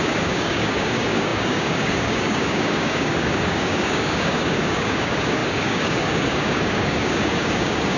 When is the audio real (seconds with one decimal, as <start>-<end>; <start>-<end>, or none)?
none